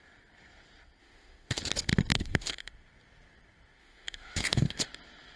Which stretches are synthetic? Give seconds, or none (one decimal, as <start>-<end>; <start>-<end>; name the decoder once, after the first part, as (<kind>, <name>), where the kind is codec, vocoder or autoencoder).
1.0-1.6 (autoencoder, DAC-VAE); 2.1-2.7; 3.8-4.9